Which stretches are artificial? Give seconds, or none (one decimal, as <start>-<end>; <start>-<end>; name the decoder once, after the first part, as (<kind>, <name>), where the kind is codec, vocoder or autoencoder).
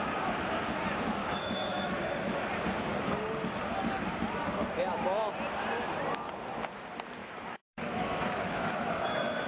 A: 1.2-2.0 (autoencoder, DAC-VAE); 7.2-9.5